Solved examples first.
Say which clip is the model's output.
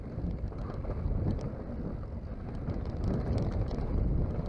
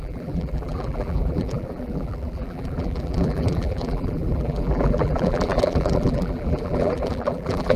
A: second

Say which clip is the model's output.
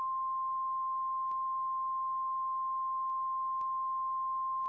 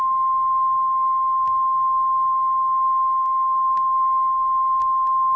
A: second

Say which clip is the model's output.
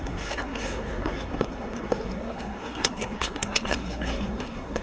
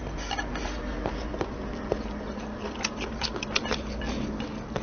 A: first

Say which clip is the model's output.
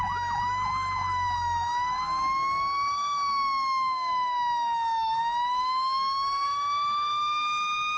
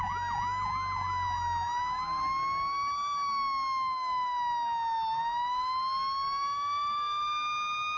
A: first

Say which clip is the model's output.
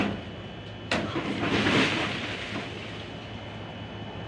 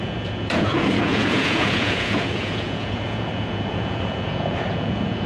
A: second